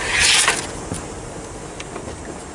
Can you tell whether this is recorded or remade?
recorded